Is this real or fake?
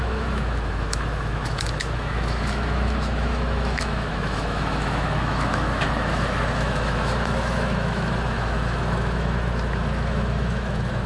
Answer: fake